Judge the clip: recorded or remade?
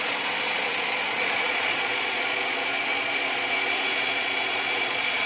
remade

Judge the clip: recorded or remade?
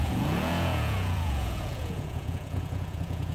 remade